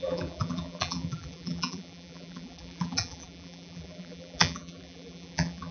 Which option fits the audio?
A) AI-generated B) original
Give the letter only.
A